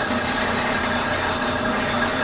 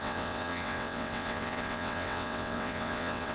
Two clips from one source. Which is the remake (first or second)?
second